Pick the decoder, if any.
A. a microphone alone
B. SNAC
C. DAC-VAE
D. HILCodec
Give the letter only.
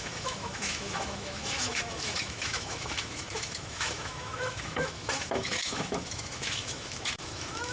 C